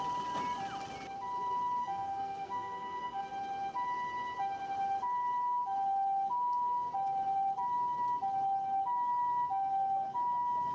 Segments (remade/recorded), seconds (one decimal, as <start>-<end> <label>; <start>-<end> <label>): 0.0-1.8 recorded; 1.8-3.2 remade; 3.2-10.7 recorded